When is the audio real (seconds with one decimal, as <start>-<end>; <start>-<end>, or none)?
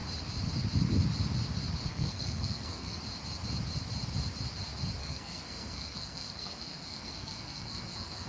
0.0-1.9; 3.0-5.0